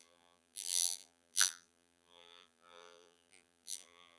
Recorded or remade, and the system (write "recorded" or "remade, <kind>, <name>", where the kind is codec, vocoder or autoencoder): remade, vocoder, BigVGAN v2